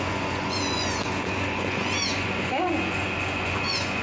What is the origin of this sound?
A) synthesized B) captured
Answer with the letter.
A